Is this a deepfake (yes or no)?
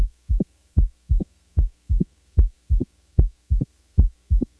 yes